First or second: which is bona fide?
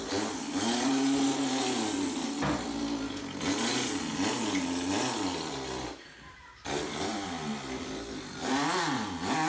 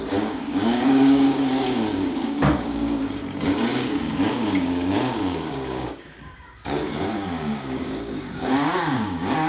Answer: first